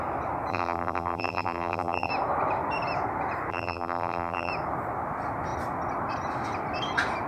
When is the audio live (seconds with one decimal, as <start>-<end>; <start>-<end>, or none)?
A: 0.0-0.5; 2.1-3.5; 4.5-7.3